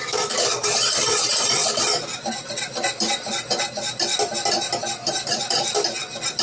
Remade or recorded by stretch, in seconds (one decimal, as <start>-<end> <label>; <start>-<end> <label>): 0.0-6.4 recorded